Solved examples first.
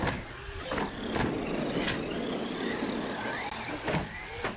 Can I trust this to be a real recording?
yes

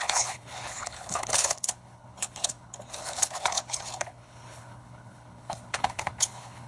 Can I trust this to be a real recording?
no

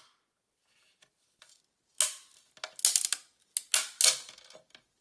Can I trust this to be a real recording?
yes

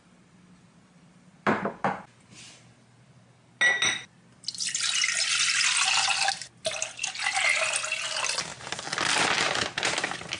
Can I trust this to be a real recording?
yes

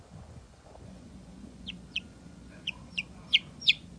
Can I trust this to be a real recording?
no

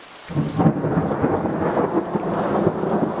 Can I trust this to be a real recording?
yes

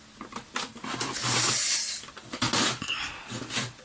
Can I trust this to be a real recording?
yes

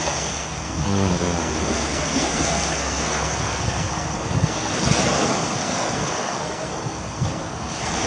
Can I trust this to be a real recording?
no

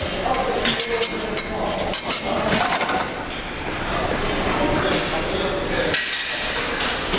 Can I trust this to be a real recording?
yes